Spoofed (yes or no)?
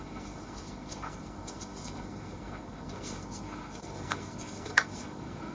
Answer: yes